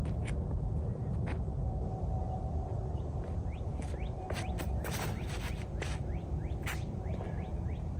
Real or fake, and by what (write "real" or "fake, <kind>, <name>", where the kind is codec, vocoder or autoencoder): real